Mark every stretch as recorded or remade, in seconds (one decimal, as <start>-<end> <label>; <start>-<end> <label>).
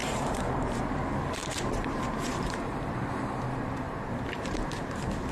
0.0-0.8 remade; 0.8-1.4 recorded; 1.4-4.6 remade; 4.6-5.3 recorded